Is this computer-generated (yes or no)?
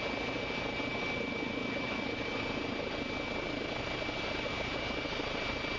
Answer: no